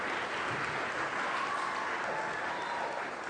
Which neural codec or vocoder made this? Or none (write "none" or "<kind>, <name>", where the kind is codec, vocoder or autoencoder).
none